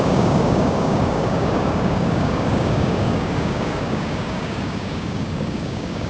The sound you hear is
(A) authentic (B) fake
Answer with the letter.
B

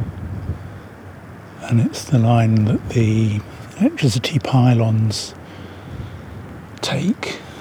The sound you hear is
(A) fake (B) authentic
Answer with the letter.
B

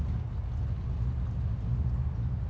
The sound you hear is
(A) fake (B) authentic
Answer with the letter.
B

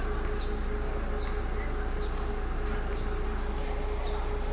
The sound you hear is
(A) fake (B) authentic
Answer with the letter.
B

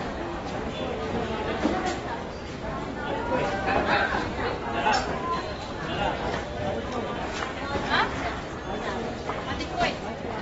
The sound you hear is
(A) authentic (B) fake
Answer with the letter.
A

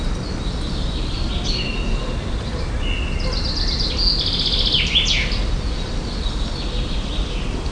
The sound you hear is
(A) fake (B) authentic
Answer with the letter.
B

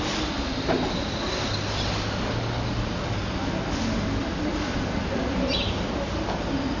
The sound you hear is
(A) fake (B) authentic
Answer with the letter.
B